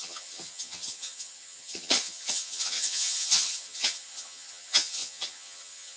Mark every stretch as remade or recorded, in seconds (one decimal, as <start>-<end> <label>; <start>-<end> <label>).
0.0-6.0 remade